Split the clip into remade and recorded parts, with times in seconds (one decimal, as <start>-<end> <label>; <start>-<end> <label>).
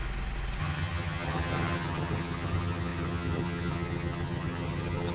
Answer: 0.0-0.6 recorded; 0.6-5.1 remade